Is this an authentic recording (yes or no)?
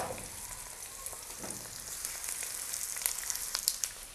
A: no